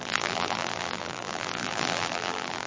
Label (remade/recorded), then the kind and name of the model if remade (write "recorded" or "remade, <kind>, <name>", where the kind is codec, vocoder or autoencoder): remade, vocoder, BigVGAN v2